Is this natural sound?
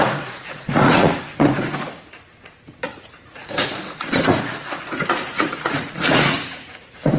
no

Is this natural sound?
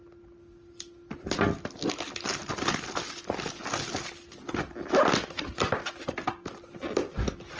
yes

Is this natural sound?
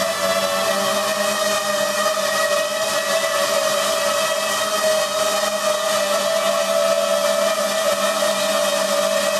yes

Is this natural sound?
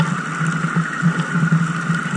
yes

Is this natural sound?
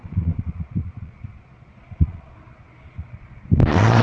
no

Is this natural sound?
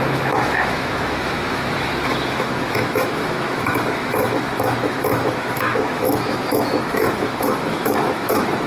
no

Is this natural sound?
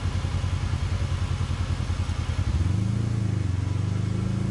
yes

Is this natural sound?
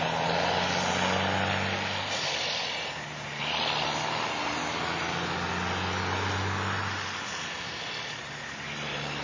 yes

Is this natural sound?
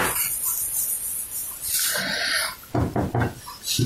yes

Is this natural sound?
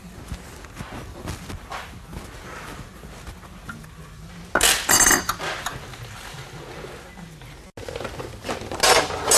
yes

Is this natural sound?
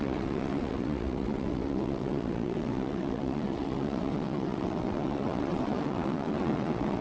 no